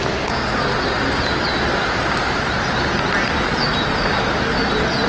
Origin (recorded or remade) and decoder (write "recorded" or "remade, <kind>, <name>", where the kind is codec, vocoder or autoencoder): recorded